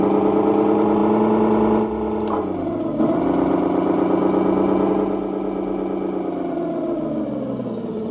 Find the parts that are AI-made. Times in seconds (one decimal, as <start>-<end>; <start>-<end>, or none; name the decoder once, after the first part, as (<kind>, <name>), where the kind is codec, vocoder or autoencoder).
none